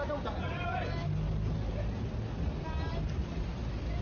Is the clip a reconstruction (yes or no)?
no